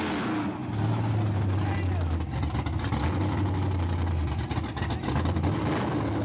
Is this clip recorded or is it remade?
recorded